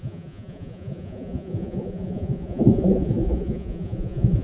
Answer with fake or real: fake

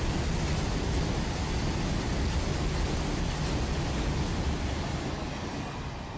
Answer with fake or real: real